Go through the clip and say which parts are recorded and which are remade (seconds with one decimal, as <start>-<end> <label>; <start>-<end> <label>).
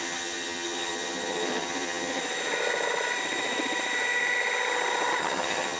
0.0-2.2 remade; 2.2-5.2 recorded; 5.2-5.8 remade